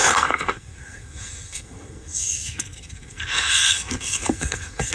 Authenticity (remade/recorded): remade